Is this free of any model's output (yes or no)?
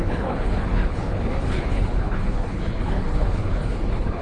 no